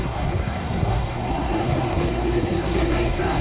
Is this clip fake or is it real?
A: fake